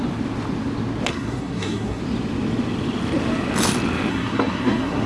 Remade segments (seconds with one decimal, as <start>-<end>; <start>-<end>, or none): 1.1-2.0; 4.1-5.1